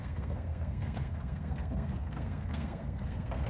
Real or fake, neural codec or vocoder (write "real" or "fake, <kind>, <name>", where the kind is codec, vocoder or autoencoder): fake, codec, SNAC